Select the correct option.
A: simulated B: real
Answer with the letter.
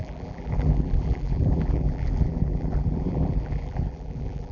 A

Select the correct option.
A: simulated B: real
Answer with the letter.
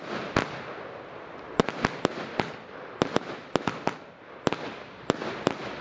B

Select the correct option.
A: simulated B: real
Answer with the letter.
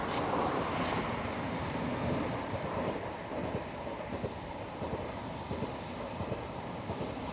A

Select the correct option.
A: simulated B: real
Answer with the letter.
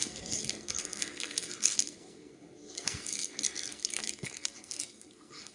A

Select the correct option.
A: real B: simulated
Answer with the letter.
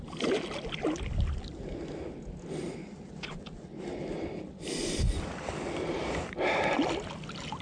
A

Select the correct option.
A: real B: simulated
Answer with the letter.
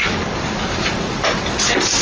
A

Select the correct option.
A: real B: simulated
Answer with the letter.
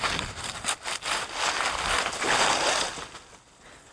A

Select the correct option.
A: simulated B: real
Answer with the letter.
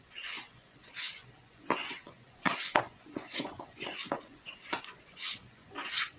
A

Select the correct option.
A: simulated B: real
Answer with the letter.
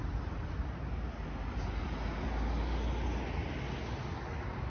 B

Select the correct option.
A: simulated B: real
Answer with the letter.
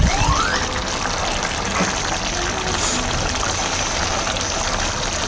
B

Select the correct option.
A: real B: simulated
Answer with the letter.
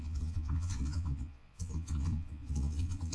B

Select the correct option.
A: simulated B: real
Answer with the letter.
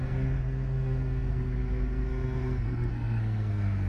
A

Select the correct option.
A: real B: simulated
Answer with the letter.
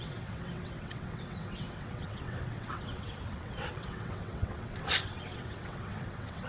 B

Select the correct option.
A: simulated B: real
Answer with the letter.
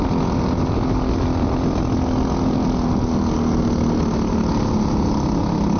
B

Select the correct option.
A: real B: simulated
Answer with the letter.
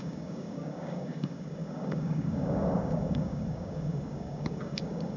B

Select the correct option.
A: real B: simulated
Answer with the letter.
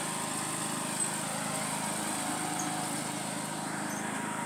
A